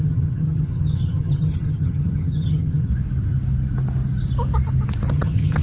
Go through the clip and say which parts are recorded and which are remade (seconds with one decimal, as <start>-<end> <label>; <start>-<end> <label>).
0.0-2.9 remade; 2.9-5.1 recorded; 5.1-5.6 remade